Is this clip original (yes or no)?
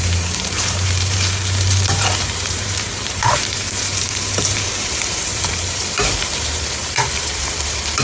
no